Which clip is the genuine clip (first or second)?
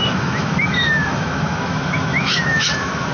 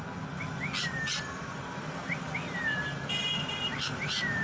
second